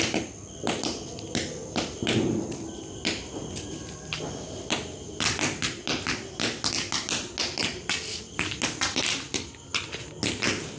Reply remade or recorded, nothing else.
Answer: recorded